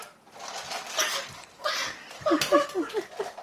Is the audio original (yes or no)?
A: no